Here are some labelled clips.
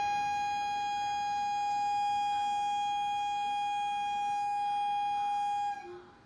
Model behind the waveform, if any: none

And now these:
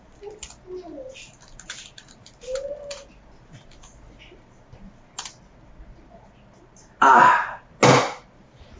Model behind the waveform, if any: none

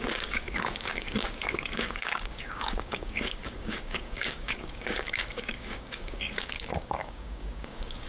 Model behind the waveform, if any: codec, DAC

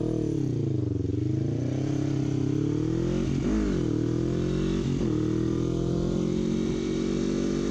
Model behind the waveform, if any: none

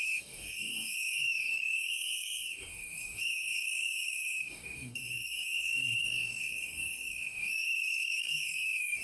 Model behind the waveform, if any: codec, DAC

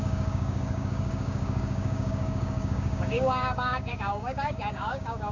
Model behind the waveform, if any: codec, DAC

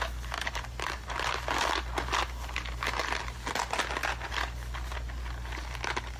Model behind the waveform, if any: none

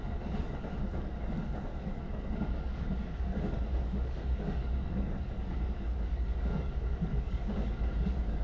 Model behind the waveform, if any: codec, DAC